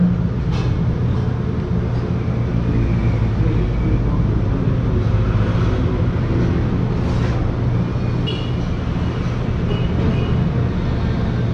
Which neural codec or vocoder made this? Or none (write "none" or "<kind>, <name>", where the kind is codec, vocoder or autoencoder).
none